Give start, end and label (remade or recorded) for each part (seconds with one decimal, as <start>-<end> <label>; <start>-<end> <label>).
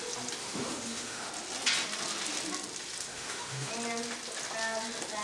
0.0-0.4 recorded; 0.4-1.3 remade; 1.3-3.1 recorded; 3.1-3.7 remade; 3.7-5.2 recorded